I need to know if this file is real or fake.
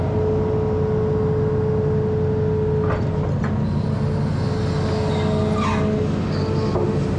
real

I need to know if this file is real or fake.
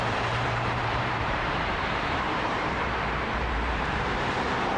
fake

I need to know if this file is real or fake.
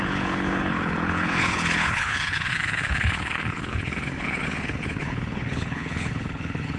fake